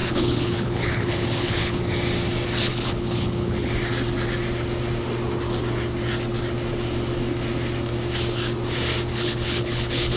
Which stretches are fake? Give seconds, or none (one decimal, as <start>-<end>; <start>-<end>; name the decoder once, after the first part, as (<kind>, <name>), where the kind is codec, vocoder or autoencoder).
0.0-1.8 (codec, HILCodec); 2.7-3.7; 9.1-10.2